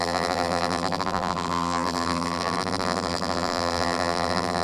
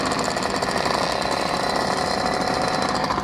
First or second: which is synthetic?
first